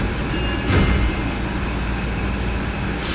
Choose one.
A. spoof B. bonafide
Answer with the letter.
B